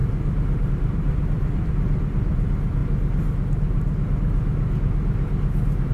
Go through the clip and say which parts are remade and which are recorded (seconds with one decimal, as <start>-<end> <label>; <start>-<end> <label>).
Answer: 0.0-0.7 recorded; 0.7-2.8 remade; 2.8-5.9 recorded